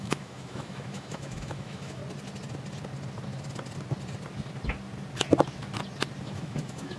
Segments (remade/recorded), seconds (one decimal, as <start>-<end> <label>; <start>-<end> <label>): 0.0-2.0 remade; 2.0-6.2 recorded; 6.2-7.0 remade